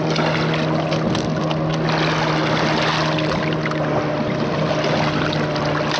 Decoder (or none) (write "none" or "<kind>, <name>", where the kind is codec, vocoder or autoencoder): none